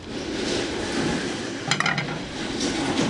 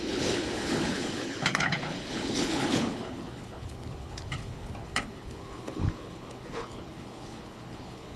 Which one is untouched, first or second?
first